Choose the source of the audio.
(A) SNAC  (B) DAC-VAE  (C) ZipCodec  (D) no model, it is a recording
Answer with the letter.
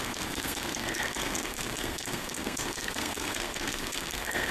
A